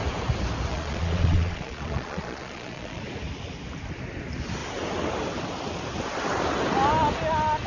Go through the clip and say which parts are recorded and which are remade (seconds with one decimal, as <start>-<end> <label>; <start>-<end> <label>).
0.0-0.7 recorded; 0.7-3.0 remade; 3.0-7.7 recorded

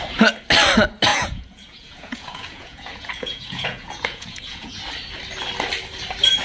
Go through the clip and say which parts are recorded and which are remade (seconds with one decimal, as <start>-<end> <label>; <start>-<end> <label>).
0.0-1.1 recorded; 1.1-4.8 remade; 4.8-6.4 recorded

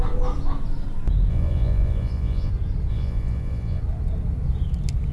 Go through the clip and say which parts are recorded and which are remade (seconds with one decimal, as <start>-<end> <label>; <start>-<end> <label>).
0.0-1.3 recorded; 1.3-2.5 remade; 2.5-2.9 recorded; 2.9-3.8 remade; 3.8-5.1 recorded

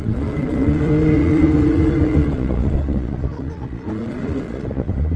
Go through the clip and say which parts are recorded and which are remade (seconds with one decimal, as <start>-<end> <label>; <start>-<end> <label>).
0.0-5.2 remade

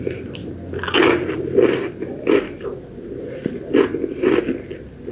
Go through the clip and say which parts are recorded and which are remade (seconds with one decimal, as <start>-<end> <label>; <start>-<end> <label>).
0.0-5.1 recorded

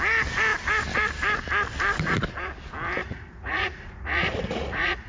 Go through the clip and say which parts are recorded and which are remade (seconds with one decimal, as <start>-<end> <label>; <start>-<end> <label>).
0.0-3.0 recorded; 3.0-5.1 remade

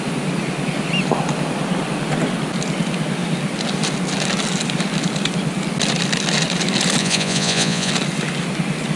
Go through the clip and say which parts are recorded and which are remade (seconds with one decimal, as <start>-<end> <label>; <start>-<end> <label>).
0.0-7.0 recorded; 7.0-7.9 remade; 7.9-9.0 recorded